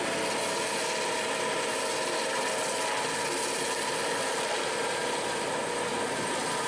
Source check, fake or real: real